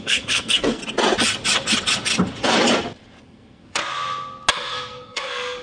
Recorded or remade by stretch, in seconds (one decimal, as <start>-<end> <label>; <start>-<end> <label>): 0.0-0.8 remade; 0.8-3.2 recorded; 3.2-3.8 remade; 3.8-4.5 recorded; 4.5-5.6 remade